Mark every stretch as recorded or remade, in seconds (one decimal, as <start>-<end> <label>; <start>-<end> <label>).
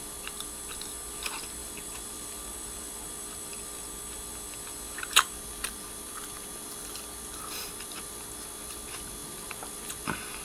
0.0-1.6 recorded; 1.6-4.3 remade; 4.3-9.2 recorded; 9.2-9.9 remade; 9.9-10.4 recorded